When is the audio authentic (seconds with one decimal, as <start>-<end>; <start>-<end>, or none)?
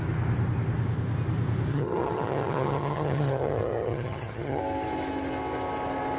0.0-1.7; 4.6-6.2